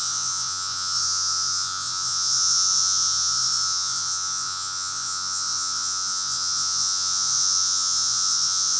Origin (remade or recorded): remade